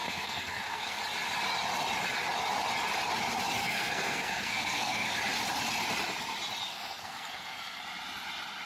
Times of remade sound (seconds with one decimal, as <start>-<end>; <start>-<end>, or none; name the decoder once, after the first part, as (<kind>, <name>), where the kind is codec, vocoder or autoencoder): 0.0-1.0 (codec, SNAC); 3.6-5.2; 6.7-7.8